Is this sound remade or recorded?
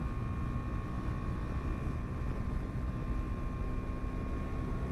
recorded